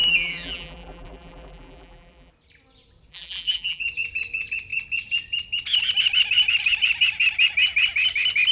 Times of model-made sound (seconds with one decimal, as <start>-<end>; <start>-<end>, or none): 0.0-2.3; 3.1-3.8